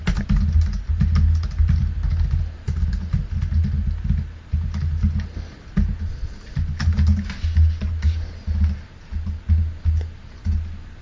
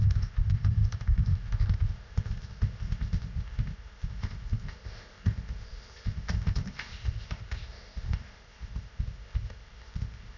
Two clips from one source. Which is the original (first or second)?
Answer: first